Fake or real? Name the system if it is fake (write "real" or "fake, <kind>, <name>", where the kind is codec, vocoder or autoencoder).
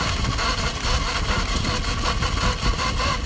real